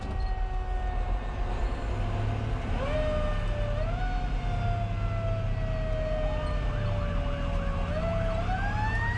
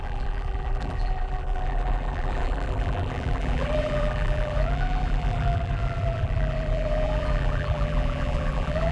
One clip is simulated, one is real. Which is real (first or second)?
first